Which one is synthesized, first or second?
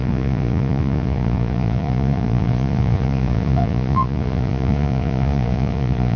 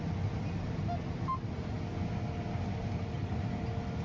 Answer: first